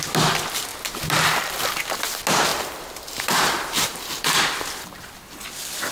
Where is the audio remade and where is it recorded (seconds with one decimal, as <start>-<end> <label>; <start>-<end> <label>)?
0.0-0.7 recorded; 0.7-1.7 remade; 1.7-2.5 recorded; 2.5-5.0 remade; 5.0-5.9 recorded